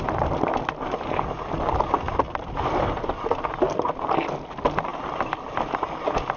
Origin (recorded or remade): recorded